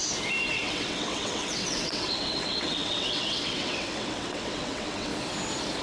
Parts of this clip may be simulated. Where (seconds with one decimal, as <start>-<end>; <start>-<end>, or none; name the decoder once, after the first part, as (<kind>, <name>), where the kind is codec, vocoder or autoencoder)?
0.5-5.1 (vocoder, WaveNeXt)